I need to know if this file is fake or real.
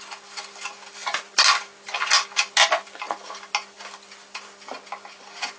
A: real